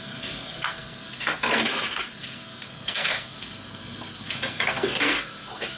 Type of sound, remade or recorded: remade